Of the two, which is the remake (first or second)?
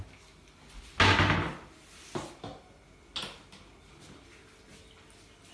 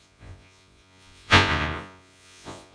second